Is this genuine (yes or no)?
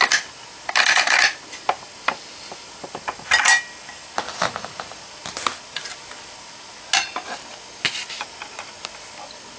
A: yes